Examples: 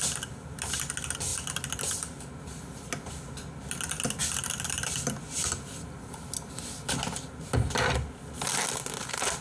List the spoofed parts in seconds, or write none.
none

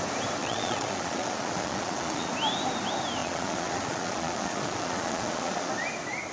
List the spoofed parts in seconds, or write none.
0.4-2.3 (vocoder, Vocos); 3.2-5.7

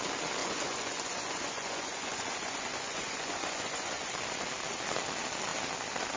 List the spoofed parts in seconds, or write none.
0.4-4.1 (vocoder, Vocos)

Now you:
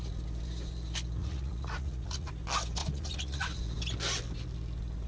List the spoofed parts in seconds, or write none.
1.2-2.3 (vocoder, Vocos); 2.8-3.6

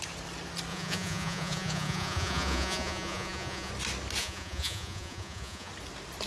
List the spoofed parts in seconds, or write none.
0.7-3.7 (vocoder, Vocos); 4.2-5.7

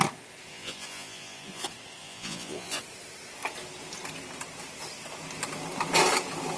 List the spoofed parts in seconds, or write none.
0.5-1.6 (vocoder, Vocos); 2.0-2.8